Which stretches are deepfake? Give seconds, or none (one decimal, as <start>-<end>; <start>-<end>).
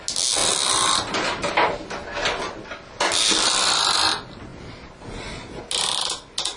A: none